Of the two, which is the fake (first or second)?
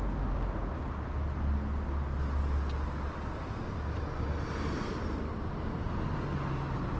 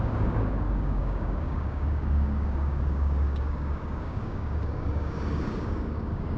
second